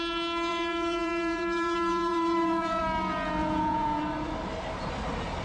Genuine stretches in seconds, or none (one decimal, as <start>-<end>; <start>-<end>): 0.0-0.5; 2.8-3.4; 4.0-5.4